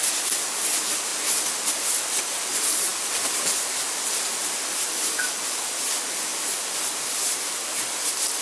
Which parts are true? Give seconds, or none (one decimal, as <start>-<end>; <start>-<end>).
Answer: 0.0-8.4